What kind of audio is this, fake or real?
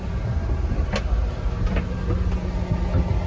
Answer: real